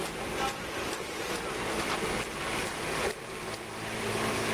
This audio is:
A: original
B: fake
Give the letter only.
A